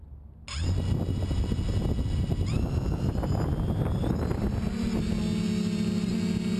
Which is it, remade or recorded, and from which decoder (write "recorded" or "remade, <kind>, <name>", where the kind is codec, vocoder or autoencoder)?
recorded